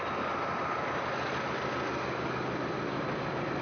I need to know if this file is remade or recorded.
recorded